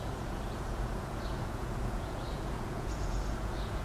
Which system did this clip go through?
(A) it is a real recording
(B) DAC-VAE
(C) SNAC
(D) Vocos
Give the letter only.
D